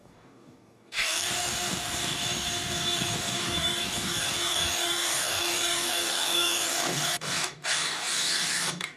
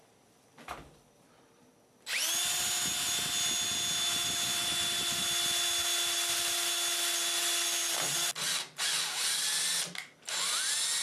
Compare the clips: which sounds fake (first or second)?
first